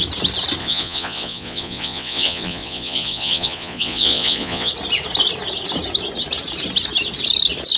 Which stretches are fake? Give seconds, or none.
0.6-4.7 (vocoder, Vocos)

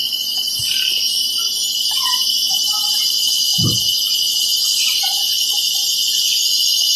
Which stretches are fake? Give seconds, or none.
0.0-2.9 (vocoder, BigVGAN v2)

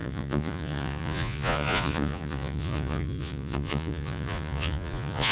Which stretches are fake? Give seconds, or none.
0.0-5.3 (vocoder, Vocos)